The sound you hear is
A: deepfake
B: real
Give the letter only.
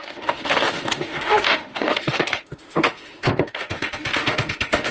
A